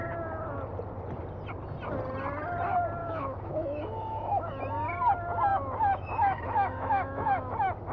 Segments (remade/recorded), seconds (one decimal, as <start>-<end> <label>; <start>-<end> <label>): 0.0-3.0 recorded; 3.0-4.4 remade; 4.4-5.5 recorded; 5.5-7.5 remade; 7.5-7.9 recorded